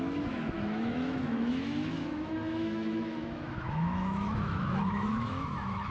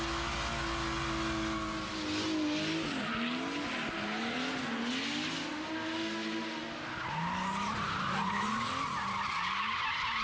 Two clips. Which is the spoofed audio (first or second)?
first